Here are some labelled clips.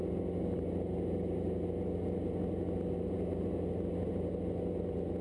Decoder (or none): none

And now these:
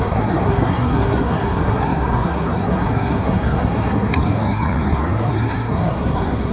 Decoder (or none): codec, SNAC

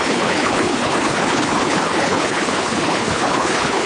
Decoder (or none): codec, HILCodec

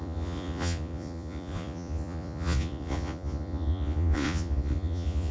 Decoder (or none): vocoder, Vocos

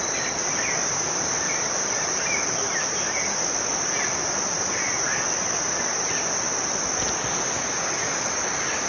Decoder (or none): none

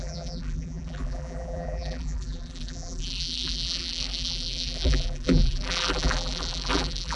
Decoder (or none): vocoder, BigVGAN v2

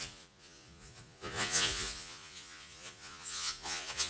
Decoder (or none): vocoder, Vocos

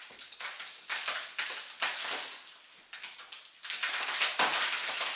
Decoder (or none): none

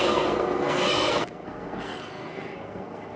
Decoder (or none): codec, SNAC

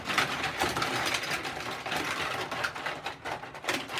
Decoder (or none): none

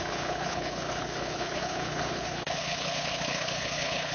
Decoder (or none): codec, HILCodec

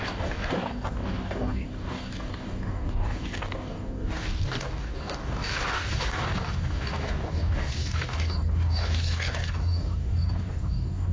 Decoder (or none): codec, DAC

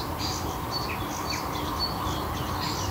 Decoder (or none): none